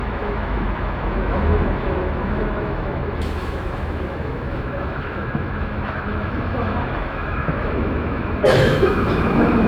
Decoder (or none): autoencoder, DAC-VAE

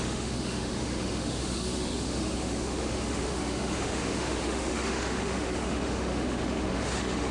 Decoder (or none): autoencoder, DAC-VAE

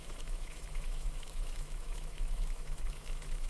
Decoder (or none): autoencoder, DAC-VAE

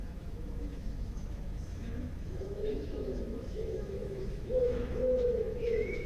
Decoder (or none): autoencoder, DAC-VAE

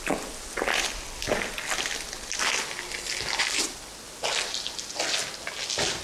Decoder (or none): none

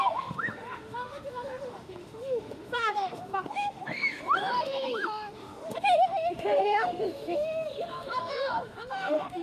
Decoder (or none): autoencoder, DAC-VAE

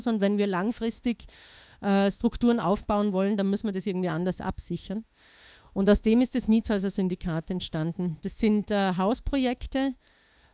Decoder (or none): autoencoder, DAC-VAE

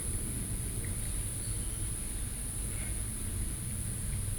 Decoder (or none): none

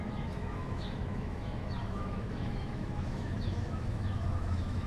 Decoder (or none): autoencoder, DAC-VAE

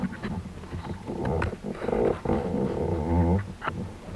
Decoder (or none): none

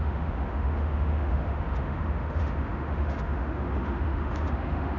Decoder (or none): autoencoder, DAC-VAE